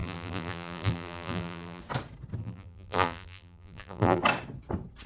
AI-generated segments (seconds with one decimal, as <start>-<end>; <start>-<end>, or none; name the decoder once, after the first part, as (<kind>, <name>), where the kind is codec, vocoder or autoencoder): 0.0-1.8 (vocoder, BigVGAN v2); 2.4-4.2